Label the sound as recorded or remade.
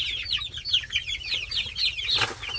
recorded